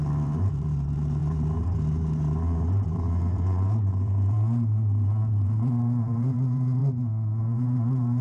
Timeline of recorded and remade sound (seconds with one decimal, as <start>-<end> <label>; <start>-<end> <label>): 0.0-6.8 remade; 6.8-7.4 recorded; 7.4-8.2 remade